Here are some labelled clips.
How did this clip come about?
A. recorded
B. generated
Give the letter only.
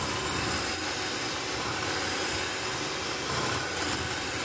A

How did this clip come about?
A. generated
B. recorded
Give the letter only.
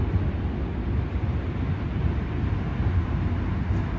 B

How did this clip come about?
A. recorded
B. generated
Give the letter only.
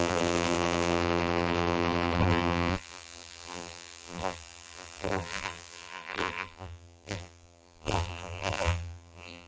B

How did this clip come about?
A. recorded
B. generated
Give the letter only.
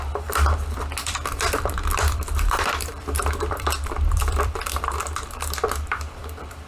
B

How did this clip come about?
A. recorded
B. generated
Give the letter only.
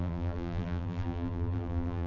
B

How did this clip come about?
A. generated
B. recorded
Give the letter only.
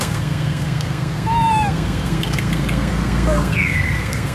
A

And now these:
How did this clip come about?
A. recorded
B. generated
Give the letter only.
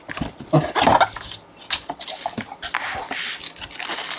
A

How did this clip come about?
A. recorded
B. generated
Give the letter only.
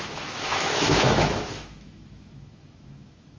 B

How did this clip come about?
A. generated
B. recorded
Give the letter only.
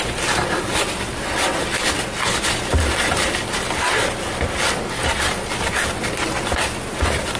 B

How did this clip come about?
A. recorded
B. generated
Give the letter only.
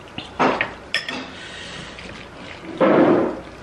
A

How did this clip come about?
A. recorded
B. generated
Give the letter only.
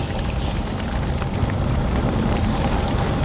B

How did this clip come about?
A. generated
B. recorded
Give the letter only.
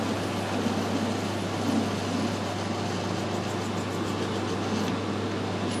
B